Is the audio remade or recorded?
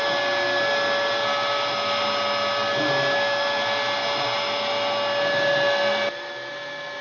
recorded